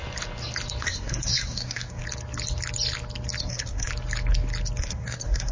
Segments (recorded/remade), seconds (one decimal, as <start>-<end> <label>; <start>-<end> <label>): 0.0-0.8 recorded; 0.8-2.0 remade; 2.0-3.4 recorded; 3.4-3.9 remade; 3.9-4.8 recorded; 4.8-5.5 remade